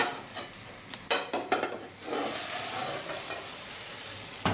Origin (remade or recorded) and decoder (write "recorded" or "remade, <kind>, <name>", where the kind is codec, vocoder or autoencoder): recorded